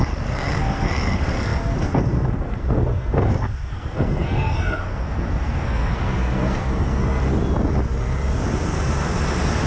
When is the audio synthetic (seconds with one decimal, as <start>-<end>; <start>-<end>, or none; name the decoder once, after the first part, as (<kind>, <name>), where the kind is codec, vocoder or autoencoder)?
0.0-7.2 (codec, SNAC)